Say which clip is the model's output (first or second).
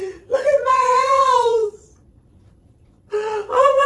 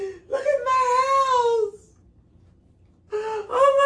first